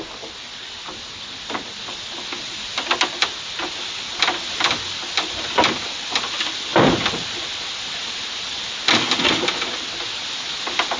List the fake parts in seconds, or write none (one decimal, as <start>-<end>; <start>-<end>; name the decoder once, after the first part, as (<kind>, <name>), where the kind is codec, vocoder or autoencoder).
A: none